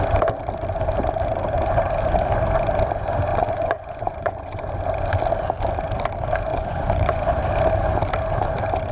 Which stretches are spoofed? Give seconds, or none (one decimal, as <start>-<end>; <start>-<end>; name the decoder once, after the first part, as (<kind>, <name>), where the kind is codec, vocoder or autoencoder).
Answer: 3.3-4.6 (vocoder, Vocos); 6.5-7.2